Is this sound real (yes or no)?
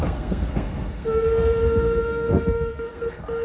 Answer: no